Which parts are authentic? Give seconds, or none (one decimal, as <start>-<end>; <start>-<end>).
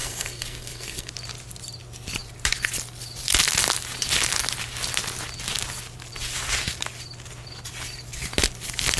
1.1-9.0